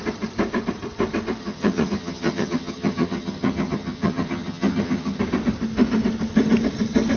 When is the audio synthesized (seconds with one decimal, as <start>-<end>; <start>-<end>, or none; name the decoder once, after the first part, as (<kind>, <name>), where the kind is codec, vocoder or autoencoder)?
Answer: 1.4-5.2 (vocoder, HiFi-GAN)